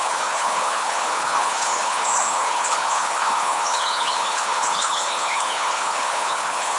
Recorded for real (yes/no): no